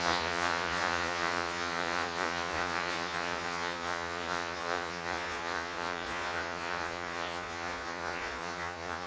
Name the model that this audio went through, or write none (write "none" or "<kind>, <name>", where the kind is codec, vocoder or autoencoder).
vocoder, Vocos